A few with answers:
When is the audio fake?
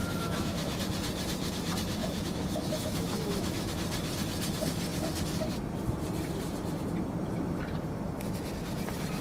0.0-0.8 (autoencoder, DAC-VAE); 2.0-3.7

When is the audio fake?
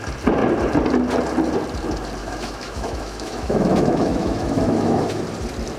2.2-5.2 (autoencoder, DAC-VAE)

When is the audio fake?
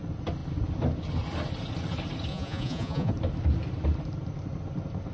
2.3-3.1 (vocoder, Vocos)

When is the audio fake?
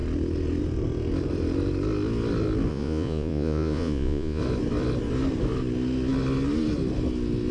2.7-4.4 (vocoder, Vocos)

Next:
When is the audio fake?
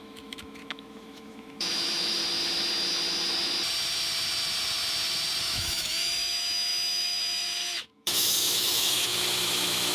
0.0-2.2 (autoencoder, DAC-VAE); 5.4-9.9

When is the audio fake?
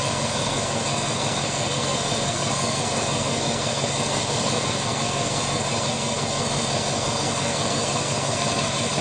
0.0-9.0 (codec, SNAC)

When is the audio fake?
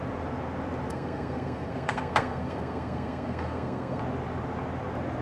0.9-4.0 (codec, SNAC)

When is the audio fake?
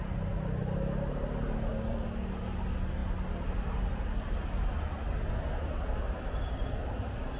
1.7-2.4 (vocoder, BigVGAN v2)